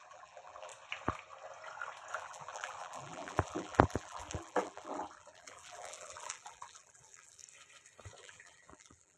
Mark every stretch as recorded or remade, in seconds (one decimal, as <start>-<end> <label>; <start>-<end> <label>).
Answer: 0.0-0.7 remade; 0.7-2.2 recorded; 2.2-7.4 remade; 7.4-8.2 recorded; 8.2-9.2 remade